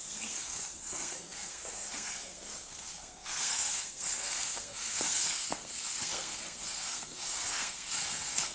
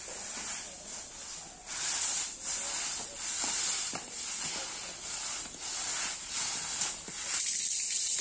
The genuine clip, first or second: second